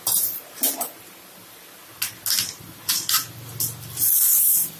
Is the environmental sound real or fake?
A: real